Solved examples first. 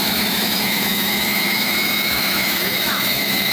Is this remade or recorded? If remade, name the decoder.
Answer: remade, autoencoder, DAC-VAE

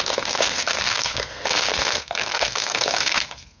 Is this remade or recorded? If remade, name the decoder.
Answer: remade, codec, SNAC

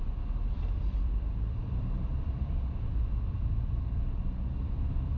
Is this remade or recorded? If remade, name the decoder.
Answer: remade, vocoder, BigVGAN v2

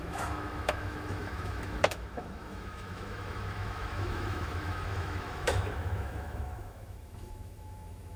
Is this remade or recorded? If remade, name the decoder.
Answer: remade, autoencoder, DAC-VAE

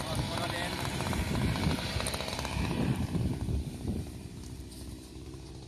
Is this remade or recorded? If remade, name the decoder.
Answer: remade, vocoder, BigVGAN v2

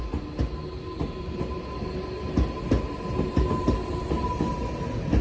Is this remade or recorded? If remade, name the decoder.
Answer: recorded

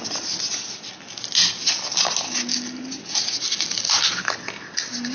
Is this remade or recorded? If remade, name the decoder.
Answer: recorded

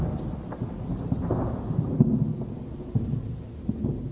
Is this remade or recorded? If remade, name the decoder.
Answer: recorded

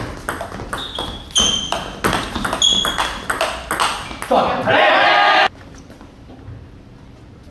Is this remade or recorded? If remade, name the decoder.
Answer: recorded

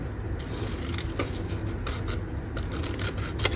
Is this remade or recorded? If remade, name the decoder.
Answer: recorded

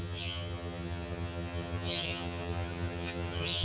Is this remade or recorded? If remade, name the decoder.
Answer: remade, vocoder, HiFi-GAN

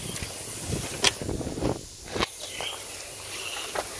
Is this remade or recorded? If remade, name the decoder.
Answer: recorded